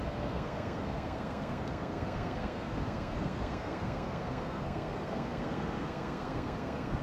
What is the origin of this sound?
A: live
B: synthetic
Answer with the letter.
B